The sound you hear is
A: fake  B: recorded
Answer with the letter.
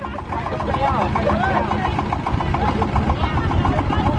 B